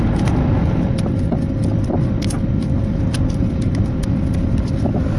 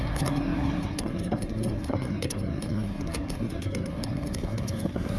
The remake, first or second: second